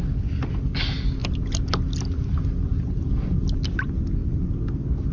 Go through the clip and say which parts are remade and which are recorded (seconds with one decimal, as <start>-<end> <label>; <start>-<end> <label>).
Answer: 0.0-5.1 recorded